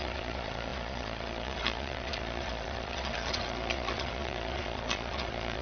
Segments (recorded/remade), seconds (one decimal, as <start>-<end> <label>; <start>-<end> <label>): 0.0-5.6 remade